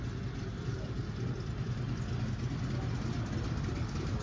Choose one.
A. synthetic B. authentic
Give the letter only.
B